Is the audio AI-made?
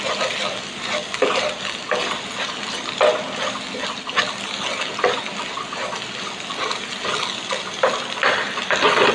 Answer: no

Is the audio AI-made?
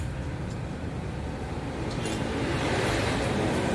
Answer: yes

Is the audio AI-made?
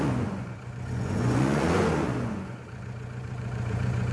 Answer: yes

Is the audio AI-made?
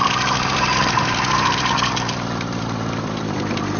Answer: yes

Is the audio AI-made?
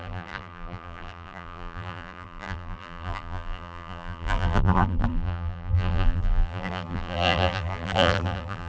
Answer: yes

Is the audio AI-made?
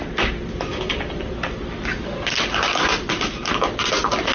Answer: no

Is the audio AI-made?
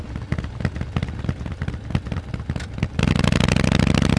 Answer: no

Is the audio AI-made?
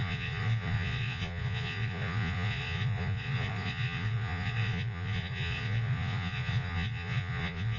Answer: yes